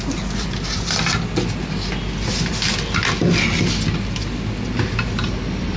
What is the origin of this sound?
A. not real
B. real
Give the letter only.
B